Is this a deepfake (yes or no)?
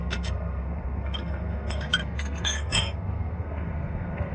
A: yes